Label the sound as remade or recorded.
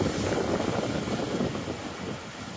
recorded